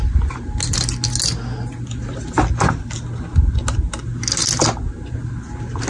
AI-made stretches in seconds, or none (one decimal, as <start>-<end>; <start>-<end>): none